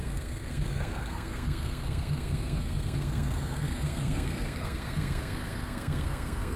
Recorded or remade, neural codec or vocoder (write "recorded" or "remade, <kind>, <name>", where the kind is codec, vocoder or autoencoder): remade, codec, SNAC